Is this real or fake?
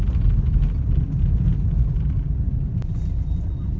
real